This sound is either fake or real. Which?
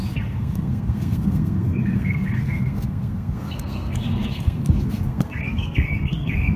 fake